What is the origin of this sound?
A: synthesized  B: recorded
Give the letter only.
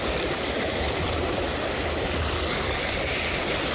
B